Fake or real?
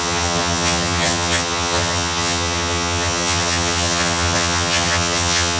fake